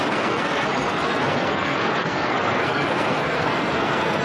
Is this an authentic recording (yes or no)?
no